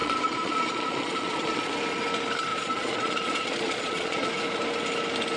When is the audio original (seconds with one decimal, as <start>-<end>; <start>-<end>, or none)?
1.7-2.5; 4.3-5.4